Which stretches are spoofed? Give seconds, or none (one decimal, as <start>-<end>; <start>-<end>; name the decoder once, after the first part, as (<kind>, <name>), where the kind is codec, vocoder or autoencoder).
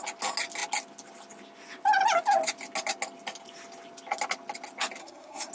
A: 5.0-5.5 (codec, SNAC)